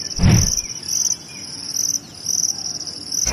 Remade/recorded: recorded